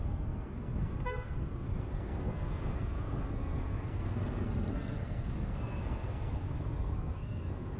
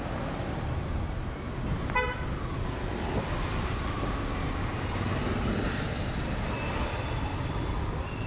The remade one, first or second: first